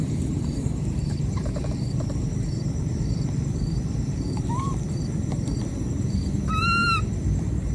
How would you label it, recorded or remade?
remade